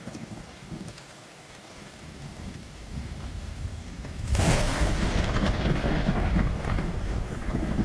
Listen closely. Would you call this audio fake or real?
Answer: fake